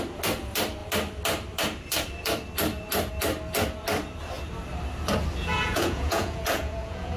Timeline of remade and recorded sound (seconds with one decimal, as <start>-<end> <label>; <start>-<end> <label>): 0.0-5.4 recorded; 5.4-7.2 remade